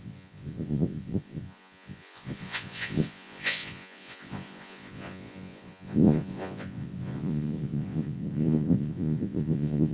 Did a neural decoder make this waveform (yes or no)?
yes